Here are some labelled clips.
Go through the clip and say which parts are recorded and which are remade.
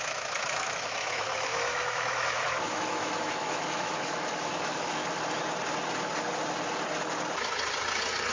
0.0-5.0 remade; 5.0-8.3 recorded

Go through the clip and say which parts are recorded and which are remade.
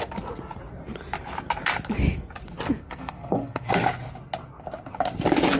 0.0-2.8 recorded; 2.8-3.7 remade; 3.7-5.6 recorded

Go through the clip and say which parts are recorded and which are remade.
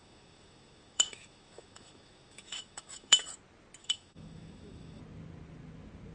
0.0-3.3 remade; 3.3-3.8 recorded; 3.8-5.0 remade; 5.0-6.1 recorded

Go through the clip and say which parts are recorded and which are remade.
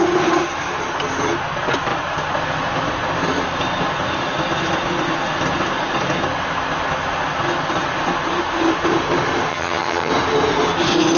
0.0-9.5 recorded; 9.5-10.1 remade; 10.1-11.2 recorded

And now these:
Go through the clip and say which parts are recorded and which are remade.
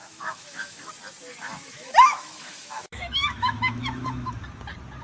0.0-0.9 remade; 0.9-1.4 recorded; 1.4-4.4 remade; 4.4-5.0 recorded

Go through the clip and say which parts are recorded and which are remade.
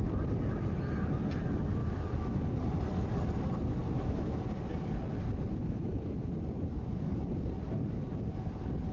0.0-1.8 recorded; 1.8-2.4 remade; 2.4-3.8 recorded; 3.8-4.4 remade; 4.4-5.5 recorded; 5.5-6.2 remade; 6.2-8.9 recorded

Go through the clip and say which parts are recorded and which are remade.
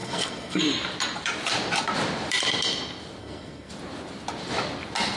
0.0-0.6 remade; 0.6-3.2 recorded; 3.2-3.7 remade; 3.7-5.2 recorded